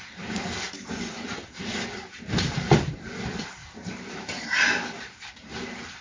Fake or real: fake